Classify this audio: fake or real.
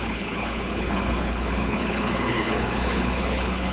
fake